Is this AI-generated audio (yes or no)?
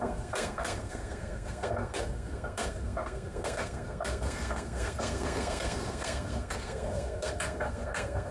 yes